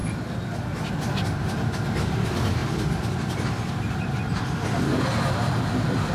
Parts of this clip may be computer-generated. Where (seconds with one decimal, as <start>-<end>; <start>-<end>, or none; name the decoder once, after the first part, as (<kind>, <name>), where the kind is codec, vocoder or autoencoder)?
2.6-4.2 (vocoder, BigVGAN v2)